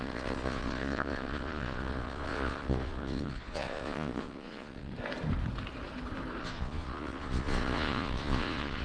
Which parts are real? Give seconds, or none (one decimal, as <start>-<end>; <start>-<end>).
4.9-6.4